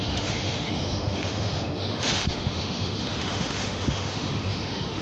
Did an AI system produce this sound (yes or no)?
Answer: yes